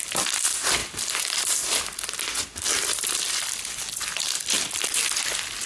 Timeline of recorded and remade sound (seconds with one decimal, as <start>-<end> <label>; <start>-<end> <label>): 0.0-5.7 recorded